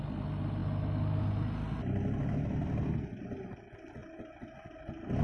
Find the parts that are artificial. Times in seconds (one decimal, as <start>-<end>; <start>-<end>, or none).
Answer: none